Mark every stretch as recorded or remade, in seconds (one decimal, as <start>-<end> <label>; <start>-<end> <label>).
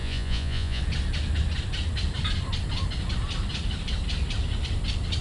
0.0-0.8 remade; 0.8-5.2 recorded